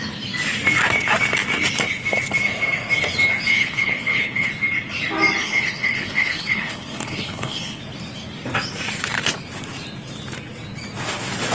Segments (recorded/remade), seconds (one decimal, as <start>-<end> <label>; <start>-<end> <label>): 0.0-3.5 recorded; 3.5-4.5 remade; 4.5-5.4 recorded; 5.4-7.8 remade; 7.8-11.5 recorded